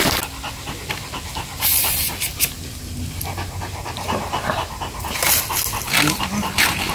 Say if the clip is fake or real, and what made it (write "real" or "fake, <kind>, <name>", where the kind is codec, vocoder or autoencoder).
real